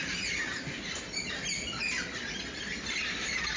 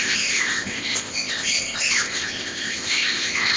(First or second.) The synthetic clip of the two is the second